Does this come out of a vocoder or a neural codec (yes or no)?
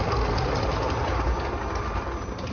no